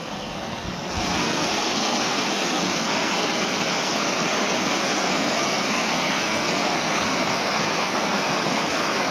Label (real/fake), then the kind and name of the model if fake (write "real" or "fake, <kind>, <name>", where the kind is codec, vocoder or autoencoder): fake, codec, SNAC